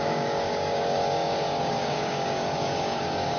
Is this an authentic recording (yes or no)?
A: no